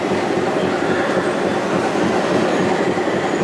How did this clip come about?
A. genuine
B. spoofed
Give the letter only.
A